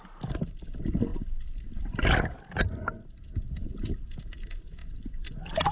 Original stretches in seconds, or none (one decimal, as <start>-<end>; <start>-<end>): 0.0-5.7